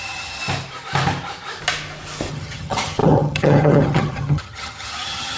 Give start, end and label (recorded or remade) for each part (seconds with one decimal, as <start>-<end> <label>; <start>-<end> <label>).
0.0-0.4 remade; 0.4-2.3 recorded; 2.3-5.4 remade